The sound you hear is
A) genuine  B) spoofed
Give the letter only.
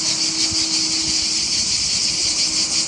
A